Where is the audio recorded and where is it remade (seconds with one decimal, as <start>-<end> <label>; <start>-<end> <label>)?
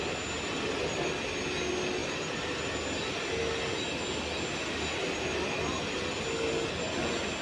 0.0-7.4 recorded